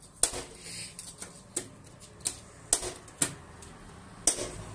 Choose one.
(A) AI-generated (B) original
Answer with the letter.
B